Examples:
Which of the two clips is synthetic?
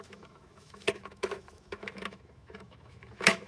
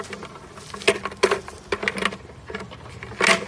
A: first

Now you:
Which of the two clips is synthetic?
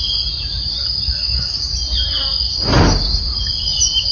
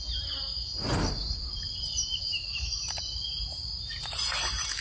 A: second